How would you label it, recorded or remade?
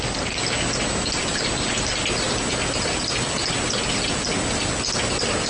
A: recorded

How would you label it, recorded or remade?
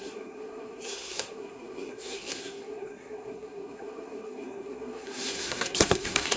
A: remade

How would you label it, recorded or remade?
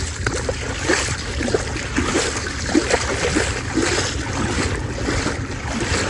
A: recorded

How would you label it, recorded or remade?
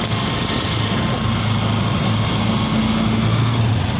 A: recorded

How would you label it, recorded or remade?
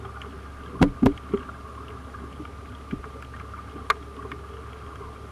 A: recorded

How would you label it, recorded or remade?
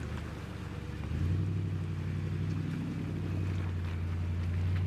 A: recorded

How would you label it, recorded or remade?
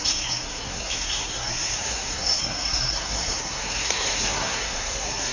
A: remade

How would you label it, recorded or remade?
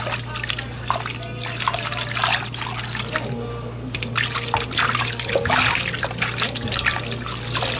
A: recorded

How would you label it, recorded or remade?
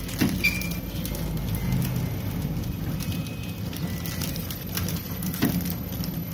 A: recorded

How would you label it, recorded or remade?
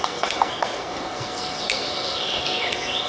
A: remade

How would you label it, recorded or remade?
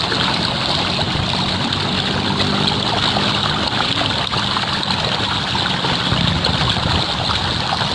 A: recorded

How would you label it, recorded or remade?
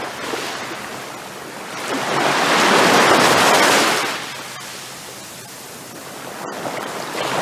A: recorded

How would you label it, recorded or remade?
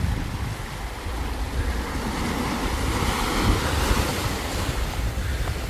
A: recorded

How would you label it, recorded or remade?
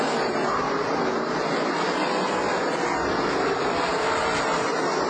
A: recorded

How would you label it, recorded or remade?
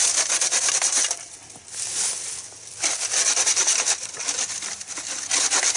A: recorded